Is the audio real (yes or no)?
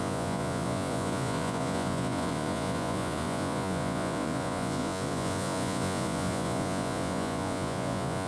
no